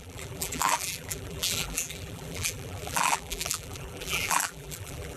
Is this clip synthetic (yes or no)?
yes